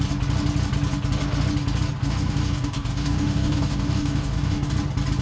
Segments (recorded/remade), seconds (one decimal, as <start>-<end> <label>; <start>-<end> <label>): 0.0-2.0 recorded; 2.0-4.7 remade; 4.7-5.2 recorded